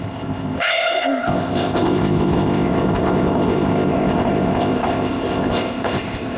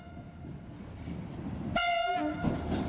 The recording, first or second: second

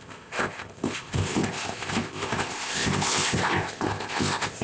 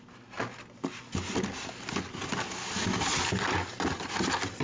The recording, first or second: second